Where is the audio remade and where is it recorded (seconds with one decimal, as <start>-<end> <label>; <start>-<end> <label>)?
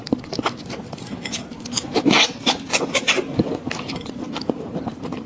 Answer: 0.0-5.3 recorded